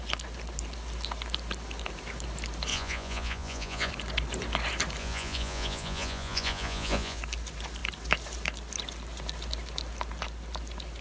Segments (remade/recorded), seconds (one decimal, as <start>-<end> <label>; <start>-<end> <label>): 0.0-2.7 recorded; 2.7-3.9 remade; 3.9-5.0 recorded; 5.0-7.2 remade; 7.2-11.0 recorded